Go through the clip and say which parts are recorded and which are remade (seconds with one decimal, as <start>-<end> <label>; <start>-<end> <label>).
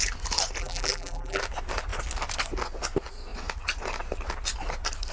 0.0-0.6 recorded; 0.6-1.4 remade; 1.4-5.1 recorded